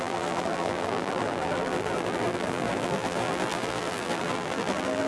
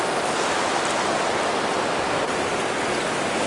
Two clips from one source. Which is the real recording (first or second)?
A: second